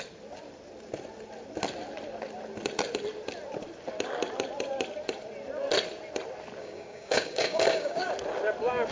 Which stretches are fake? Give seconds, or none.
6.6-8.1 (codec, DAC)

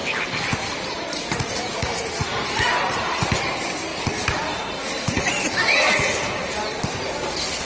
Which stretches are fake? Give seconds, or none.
0.0-3.3 (vocoder, BigVGAN v2)

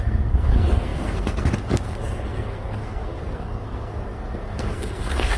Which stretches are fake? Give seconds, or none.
0.0-5.4 (codec, SNAC)

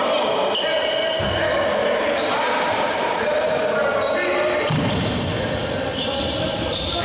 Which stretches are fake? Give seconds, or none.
0.8-1.4 (vocoder, BigVGAN v2); 1.8-3.5

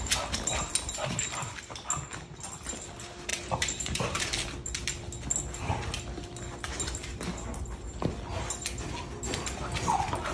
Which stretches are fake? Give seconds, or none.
3.3-4.2 (vocoder, BigVGAN v2)